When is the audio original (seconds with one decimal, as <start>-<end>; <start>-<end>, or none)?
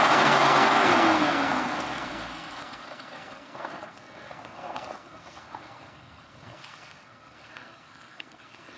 none